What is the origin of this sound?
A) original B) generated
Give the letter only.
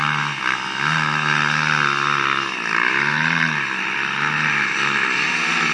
A